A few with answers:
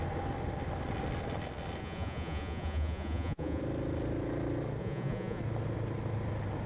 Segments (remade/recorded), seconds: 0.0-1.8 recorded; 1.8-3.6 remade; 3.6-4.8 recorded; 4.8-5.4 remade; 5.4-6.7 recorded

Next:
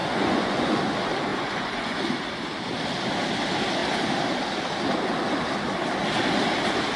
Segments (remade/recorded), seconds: 0.0-0.8 remade; 0.8-1.3 recorded; 1.3-2.0 remade; 2.0-7.0 recorded